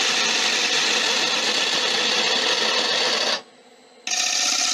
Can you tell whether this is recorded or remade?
recorded